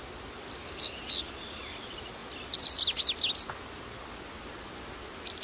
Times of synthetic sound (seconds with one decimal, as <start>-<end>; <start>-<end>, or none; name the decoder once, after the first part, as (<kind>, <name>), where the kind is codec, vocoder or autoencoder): none